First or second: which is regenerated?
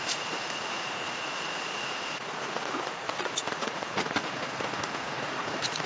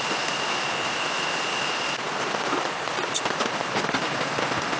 first